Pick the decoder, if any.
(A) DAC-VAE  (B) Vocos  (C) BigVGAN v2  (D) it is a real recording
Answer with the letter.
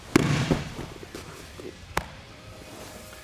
D